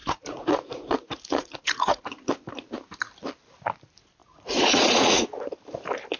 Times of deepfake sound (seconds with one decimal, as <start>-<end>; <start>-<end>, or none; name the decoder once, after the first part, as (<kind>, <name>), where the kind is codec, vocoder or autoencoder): 0.0-2.0 (vocoder, Vocos); 4.2-5.5